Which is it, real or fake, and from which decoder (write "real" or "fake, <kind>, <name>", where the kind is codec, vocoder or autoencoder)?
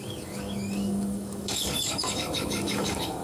fake, codec, DAC